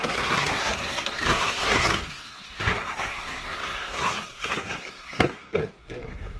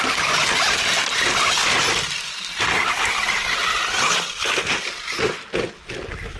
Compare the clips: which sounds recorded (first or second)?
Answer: second